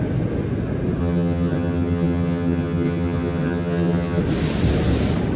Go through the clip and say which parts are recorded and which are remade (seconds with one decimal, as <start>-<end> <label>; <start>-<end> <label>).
0.0-1.0 recorded; 1.0-4.2 remade; 4.2-5.4 recorded